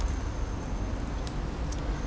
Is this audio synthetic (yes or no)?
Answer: no